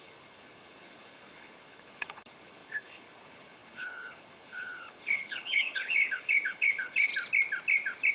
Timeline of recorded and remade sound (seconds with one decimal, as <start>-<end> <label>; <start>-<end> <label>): 0.0-7.1 remade; 7.1-8.1 recorded